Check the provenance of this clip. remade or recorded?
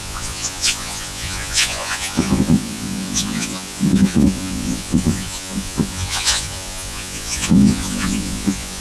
remade